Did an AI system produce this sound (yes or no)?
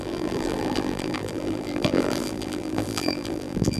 yes